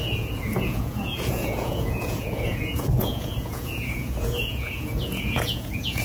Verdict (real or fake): fake